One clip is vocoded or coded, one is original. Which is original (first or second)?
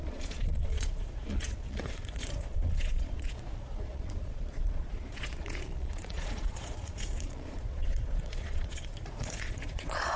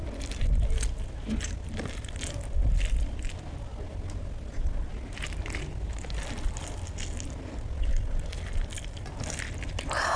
second